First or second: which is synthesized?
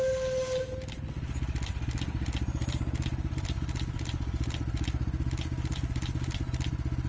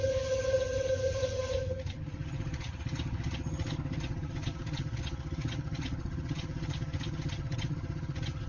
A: second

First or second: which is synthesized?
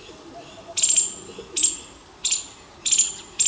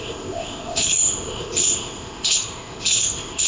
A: second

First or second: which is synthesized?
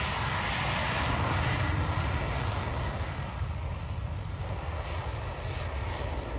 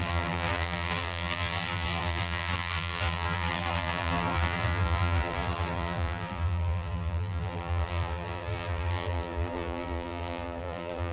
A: second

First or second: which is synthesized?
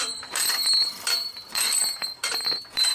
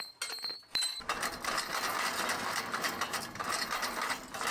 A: first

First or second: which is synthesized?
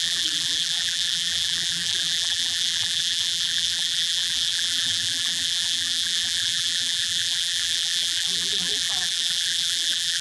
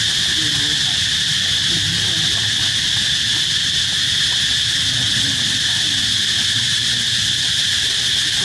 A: first